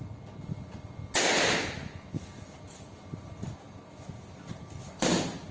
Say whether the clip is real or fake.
real